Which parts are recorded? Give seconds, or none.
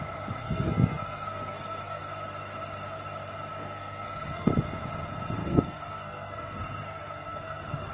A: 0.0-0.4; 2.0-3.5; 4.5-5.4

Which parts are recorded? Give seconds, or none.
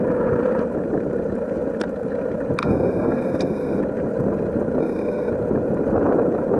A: 0.0-2.6; 3.8-4.8; 5.3-6.6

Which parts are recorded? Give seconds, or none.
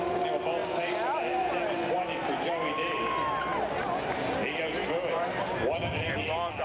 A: 0.0-6.6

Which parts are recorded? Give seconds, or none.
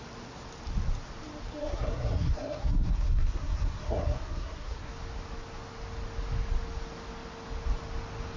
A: 0.0-1.6; 4.9-8.4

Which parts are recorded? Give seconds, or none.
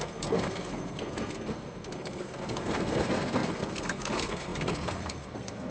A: none